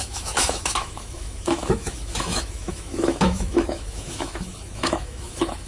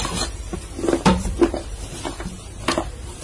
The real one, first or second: second